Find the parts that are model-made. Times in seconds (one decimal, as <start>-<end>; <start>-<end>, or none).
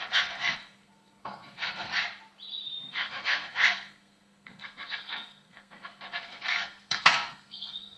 0.0-1.9; 2.9-8.0